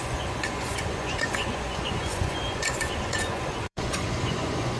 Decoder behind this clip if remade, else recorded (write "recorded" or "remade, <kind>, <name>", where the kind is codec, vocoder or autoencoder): remade, vocoder, Vocos